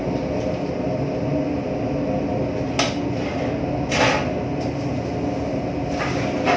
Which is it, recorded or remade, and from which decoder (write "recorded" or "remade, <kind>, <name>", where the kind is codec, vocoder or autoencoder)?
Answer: recorded